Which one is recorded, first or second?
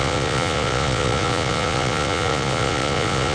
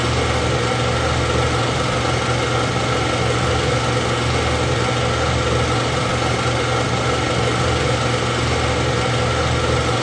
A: second